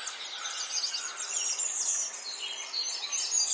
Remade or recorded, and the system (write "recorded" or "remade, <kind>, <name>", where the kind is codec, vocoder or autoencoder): recorded